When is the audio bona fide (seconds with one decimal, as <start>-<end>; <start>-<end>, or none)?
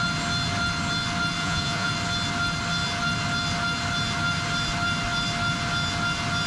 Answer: 0.0-1.4; 1.9-6.5